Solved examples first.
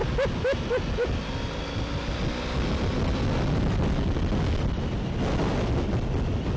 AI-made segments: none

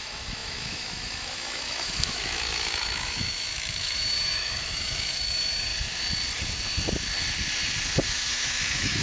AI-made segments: 0.0-5.7 (autoencoder, DAC-VAE); 8.3-9.0